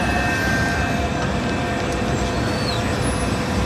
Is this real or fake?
real